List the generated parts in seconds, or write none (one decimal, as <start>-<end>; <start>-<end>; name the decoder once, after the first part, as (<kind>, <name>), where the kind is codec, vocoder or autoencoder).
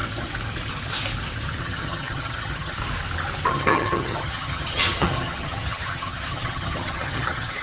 1.6-2.8 (vocoder, HiFi-GAN); 3.5-7.6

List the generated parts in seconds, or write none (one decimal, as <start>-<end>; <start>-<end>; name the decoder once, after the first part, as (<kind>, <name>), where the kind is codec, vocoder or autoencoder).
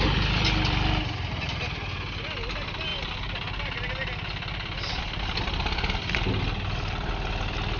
none